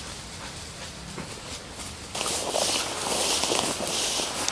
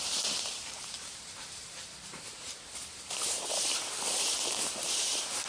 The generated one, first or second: second